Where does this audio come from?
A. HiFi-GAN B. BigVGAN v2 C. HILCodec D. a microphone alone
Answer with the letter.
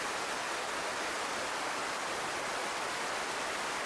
D